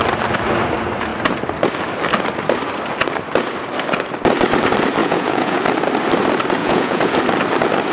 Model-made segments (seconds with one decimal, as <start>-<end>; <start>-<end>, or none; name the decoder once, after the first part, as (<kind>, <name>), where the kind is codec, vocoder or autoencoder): 5.0-5.6 (vocoder, Vocos); 6.6-7.2